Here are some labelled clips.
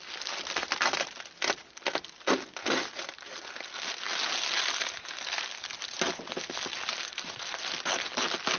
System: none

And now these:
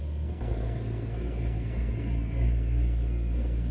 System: codec, SNAC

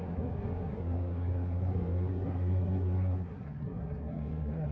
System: codec, SNAC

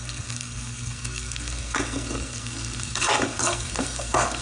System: codec, SNAC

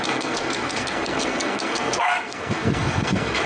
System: codec, SNAC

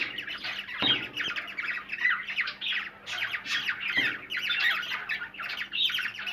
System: none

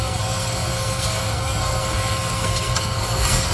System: codec, SNAC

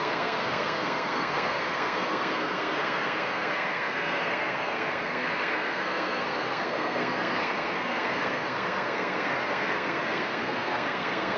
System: codec, SNAC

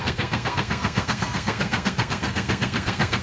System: codec, SNAC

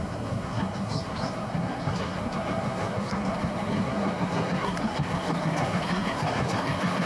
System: codec, SNAC